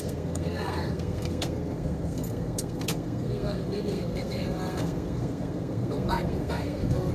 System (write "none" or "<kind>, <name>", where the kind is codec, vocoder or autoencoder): codec, SNAC